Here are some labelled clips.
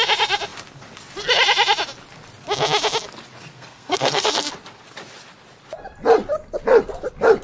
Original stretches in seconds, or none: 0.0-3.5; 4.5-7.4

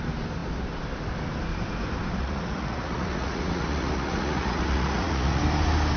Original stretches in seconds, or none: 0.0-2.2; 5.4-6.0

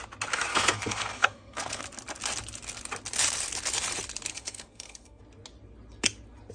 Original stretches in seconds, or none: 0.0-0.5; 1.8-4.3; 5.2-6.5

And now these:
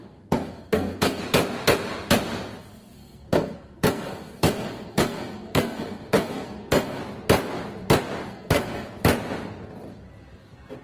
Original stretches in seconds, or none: 1.2-2.6; 7.0-8.3; 9.0-10.8

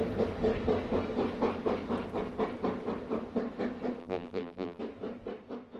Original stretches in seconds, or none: 0.0-4.0; 4.8-5.8

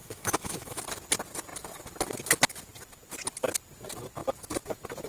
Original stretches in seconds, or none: 0.8-5.1

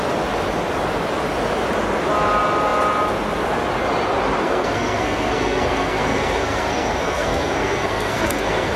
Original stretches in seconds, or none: 0.0-4.4

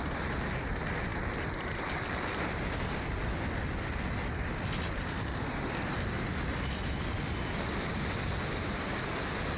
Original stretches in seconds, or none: 0.0-9.6